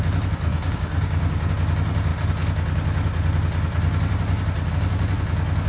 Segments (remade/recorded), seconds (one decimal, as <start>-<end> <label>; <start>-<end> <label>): 0.0-0.5 recorded; 0.5-1.5 remade; 1.5-5.7 recorded